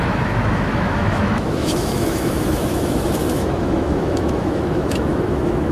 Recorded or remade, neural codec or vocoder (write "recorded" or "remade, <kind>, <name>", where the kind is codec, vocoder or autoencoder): remade, autoencoder, DAC-VAE